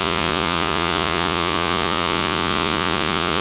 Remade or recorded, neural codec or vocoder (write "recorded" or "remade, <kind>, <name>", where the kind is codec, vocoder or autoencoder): remade, vocoder, Vocos